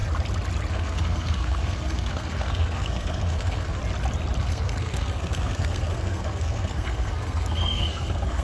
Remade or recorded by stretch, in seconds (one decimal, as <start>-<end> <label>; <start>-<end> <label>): 0.0-0.7 recorded; 0.7-3.8 remade; 3.8-4.4 recorded; 4.4-8.4 remade